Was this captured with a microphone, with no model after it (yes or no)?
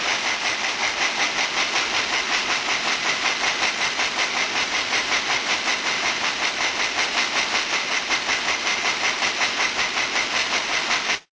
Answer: yes